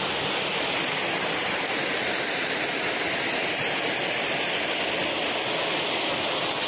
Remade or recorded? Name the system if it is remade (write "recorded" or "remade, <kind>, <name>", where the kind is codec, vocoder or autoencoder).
recorded